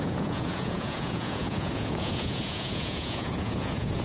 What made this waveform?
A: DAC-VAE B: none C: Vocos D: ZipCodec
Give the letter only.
C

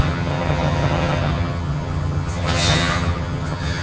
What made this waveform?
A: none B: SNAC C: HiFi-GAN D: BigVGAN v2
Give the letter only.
C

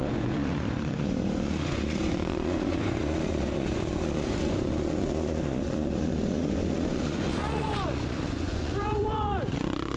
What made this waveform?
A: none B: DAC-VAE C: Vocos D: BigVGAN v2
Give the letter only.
C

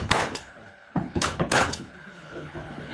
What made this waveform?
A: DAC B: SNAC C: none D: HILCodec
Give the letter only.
D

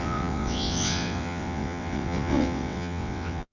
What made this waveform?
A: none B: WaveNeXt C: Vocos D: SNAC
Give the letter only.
B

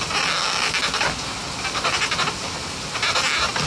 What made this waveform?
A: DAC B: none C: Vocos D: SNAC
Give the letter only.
B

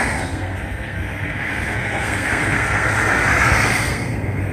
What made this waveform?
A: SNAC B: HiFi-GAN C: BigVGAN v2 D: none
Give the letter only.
A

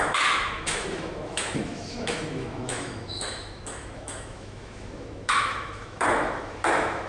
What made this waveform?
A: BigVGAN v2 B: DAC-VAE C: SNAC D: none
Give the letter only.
B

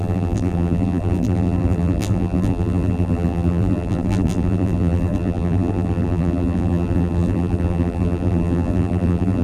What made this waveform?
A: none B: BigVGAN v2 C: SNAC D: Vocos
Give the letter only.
B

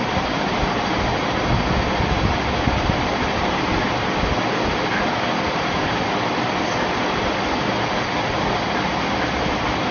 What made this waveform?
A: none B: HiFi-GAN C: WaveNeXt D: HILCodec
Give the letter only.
A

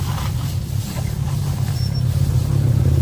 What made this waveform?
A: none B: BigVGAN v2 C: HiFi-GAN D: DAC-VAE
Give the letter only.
A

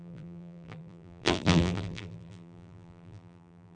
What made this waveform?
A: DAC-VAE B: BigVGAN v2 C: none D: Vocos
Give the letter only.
B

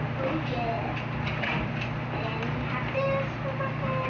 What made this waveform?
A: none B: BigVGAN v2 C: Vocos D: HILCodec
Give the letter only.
A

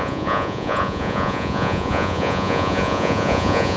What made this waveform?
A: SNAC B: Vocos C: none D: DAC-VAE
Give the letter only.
B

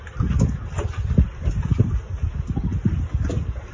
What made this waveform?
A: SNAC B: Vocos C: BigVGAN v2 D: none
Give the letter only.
D